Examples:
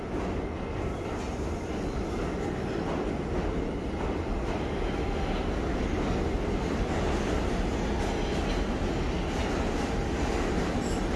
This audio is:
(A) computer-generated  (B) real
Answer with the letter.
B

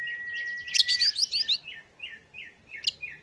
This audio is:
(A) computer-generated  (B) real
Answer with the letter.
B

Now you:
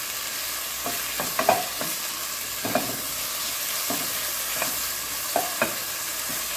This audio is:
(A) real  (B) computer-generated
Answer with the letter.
A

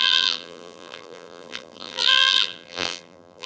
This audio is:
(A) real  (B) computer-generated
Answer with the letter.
B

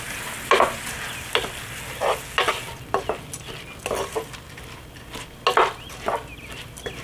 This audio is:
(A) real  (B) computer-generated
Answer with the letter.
A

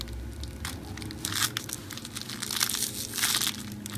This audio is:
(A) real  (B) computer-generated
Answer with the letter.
A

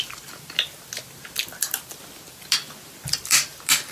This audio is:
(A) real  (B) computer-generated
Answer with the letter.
A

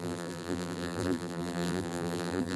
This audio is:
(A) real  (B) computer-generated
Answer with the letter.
B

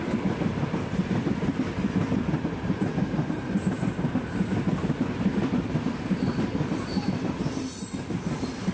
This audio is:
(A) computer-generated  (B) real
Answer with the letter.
A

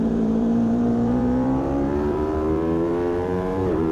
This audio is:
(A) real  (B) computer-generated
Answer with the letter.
B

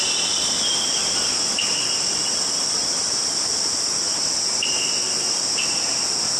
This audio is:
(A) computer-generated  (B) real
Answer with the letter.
B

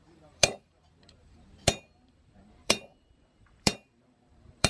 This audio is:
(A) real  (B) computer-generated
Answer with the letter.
B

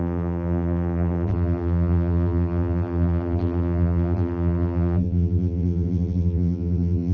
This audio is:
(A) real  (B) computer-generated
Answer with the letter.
B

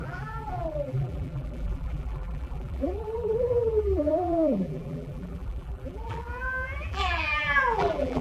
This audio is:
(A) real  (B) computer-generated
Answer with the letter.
B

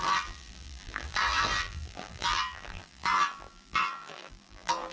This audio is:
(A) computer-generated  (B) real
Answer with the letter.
A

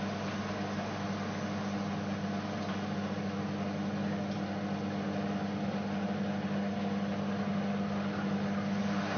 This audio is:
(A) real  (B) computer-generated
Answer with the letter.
A